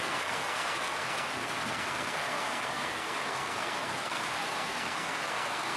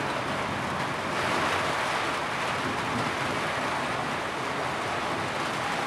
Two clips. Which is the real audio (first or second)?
second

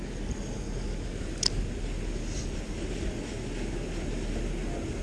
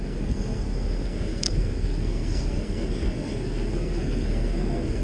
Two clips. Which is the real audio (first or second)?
first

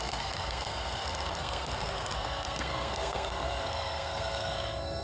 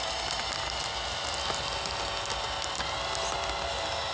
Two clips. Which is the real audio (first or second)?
second